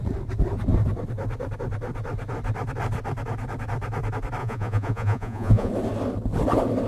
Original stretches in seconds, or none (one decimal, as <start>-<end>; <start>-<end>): 0.0-4.4; 5.7-6.9